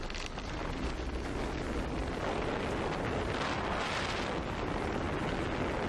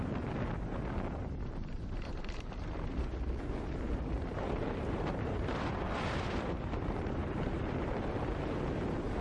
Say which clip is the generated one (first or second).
second